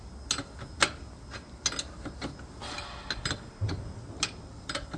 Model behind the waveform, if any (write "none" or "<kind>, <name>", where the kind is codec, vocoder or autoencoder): none